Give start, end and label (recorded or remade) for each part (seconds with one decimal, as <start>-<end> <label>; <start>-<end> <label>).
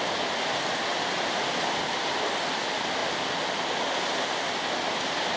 0.0-5.4 recorded